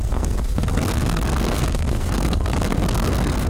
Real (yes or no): no